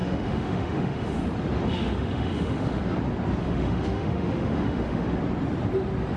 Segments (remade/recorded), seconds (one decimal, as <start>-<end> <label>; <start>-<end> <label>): 0.0-1.2 remade; 1.2-1.7 recorded; 1.7-2.8 remade; 2.8-3.4 recorded; 3.4-5.2 remade; 5.2-6.2 recorded